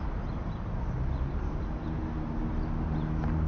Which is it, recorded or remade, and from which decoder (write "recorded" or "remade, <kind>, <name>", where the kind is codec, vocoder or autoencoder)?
recorded